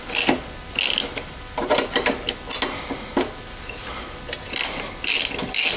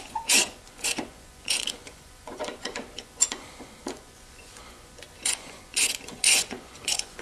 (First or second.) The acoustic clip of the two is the first